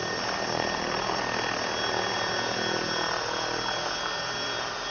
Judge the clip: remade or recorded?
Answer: recorded